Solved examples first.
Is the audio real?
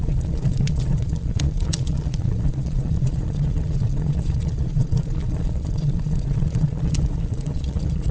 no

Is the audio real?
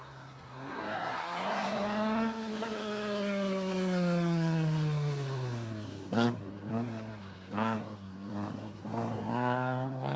no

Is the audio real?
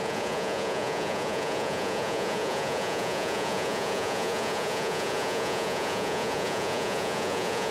no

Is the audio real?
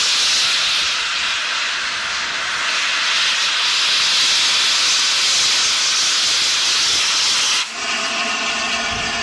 yes